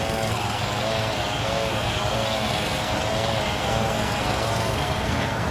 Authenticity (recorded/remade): remade